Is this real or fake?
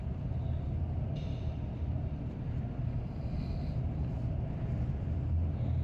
real